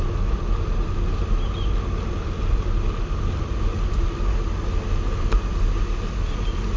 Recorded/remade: recorded